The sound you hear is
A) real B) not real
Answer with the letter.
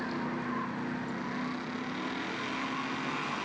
A